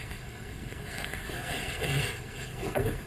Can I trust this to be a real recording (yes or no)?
no